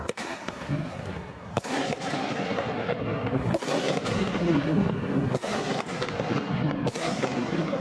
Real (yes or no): no